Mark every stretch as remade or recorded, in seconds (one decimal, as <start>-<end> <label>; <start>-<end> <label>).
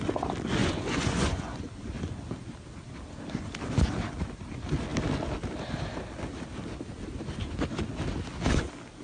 0.0-0.6 recorded; 0.6-1.6 remade; 1.6-9.0 recorded